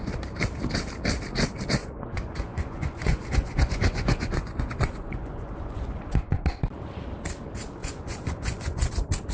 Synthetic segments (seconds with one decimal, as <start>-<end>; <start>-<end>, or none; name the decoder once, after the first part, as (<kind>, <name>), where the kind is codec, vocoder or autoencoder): 1.8-6.4 (vocoder, Vocos); 7.8-8.9